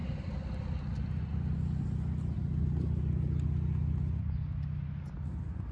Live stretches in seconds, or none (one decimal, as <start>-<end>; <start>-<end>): 0.0-5.7